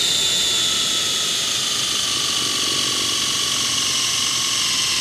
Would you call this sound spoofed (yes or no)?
no